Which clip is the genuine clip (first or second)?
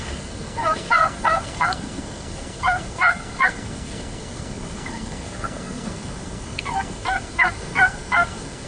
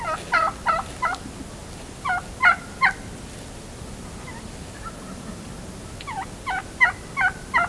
second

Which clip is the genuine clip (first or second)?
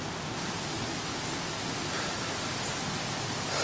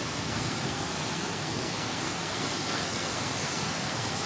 first